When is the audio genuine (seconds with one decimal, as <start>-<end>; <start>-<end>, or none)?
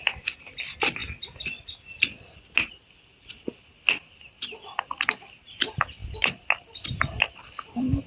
0.0-8.1